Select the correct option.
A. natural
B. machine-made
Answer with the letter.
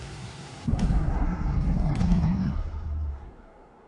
B